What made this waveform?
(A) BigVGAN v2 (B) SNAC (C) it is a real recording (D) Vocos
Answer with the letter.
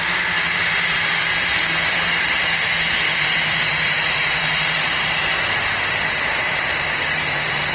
A